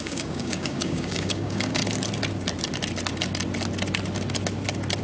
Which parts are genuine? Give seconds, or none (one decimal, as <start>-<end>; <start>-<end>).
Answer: 1.8-5.0